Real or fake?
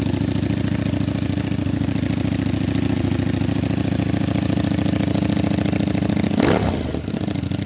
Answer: real